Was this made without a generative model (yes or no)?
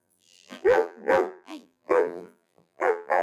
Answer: no